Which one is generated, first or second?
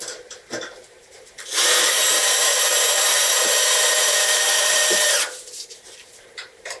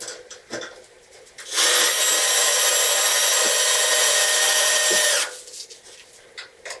first